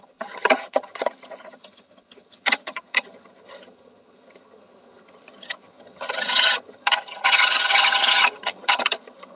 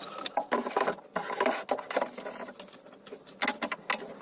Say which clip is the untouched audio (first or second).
second